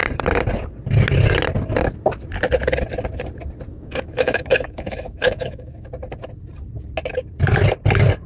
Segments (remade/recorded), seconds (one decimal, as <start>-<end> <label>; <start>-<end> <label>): 0.0-3.7 recorded; 3.7-5.9 remade; 5.9-8.3 recorded